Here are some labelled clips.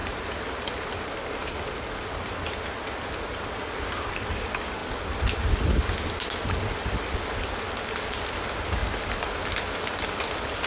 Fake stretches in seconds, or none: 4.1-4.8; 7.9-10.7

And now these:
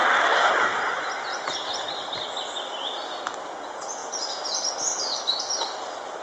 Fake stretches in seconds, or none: none

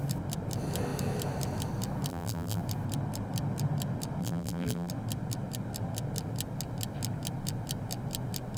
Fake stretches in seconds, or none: 2.1-2.6; 4.2-4.9

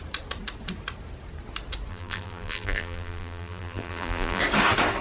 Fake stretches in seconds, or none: 1.9-4.4